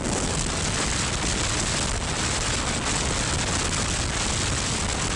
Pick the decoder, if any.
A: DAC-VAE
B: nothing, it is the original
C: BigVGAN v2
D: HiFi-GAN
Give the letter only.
B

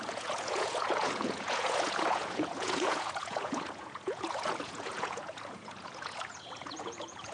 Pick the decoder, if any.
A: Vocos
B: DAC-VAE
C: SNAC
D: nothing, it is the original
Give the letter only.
A